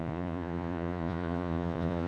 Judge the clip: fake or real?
fake